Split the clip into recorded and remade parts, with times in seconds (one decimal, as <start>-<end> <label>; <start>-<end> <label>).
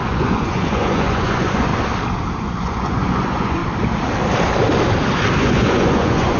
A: 0.0-1.7 remade; 1.7-2.4 recorded; 2.4-3.6 remade; 3.6-5.4 recorded; 5.4-6.4 remade